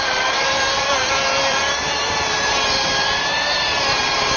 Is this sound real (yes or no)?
no